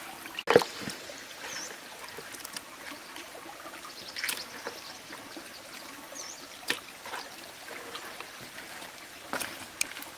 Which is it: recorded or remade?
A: recorded